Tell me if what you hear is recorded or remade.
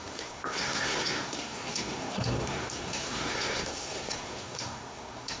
remade